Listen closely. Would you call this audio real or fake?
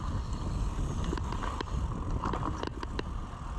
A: real